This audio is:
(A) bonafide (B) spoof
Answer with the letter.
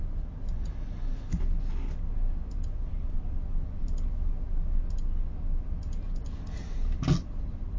A